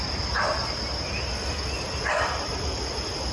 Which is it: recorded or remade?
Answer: recorded